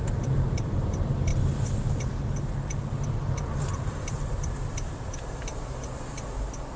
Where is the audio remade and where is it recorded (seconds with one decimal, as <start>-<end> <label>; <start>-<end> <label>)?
0.0-1.3 remade; 1.3-3.0 recorded; 3.0-6.8 remade